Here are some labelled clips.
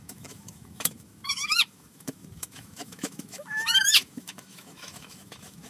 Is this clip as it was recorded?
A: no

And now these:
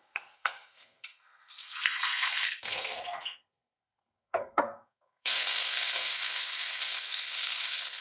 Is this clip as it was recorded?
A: no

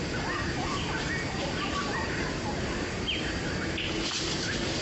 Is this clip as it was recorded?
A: yes